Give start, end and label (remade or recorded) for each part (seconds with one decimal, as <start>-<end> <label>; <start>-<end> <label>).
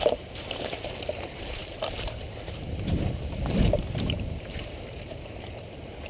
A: 0.0-6.1 remade